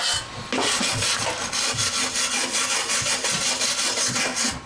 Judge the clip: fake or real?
real